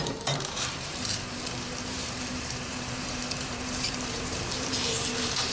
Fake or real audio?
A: fake